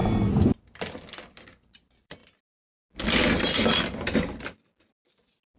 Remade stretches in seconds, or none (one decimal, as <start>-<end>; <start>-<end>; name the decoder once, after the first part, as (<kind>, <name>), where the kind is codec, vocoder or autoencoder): 0.6-2.2 (vocoder, BigVGAN v2)